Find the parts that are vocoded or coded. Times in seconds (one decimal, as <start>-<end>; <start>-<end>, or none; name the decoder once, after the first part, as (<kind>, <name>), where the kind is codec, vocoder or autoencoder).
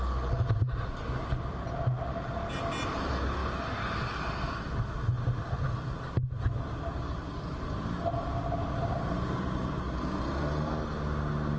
none